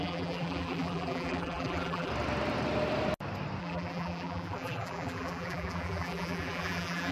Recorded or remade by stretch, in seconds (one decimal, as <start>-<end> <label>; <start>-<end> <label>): 0.0-2.1 remade; 2.1-3.6 recorded; 3.6-7.1 remade

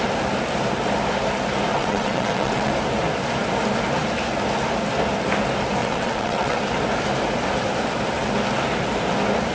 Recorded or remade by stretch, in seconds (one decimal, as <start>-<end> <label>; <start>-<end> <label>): 0.0-1.7 recorded; 1.7-2.7 remade; 2.7-5.8 recorded; 5.8-6.6 remade; 6.6-9.5 recorded

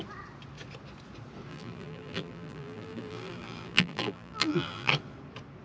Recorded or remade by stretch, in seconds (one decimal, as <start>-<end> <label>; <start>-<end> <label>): 0.0-1.5 recorded; 1.5-4.9 remade; 4.9-5.6 recorded

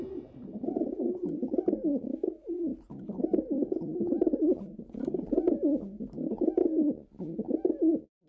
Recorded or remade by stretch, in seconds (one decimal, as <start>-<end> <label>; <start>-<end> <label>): 0.0-8.3 recorded